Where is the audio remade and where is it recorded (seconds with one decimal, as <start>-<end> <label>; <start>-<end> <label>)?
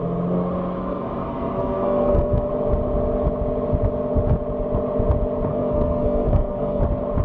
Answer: 0.0-0.8 recorded; 0.8-2.5 remade; 2.5-5.5 recorded; 5.5-6.8 remade; 6.8-7.2 recorded